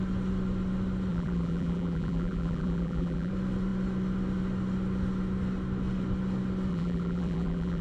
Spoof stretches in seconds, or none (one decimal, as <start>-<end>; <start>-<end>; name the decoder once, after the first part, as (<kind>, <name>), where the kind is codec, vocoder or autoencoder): 1.1-3.3 (vocoder, BigVGAN v2); 6.7-7.8